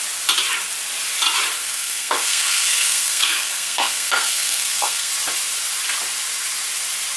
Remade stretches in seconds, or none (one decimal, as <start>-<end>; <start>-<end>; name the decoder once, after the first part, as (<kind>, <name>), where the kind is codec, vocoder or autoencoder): 1.6-5.1 (codec, SNAC)